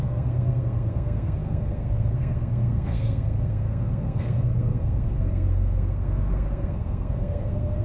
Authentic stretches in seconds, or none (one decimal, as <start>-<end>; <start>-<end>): none